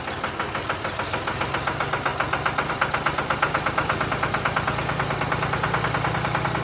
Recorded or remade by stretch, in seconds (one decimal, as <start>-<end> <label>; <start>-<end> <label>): 0.0-6.6 recorded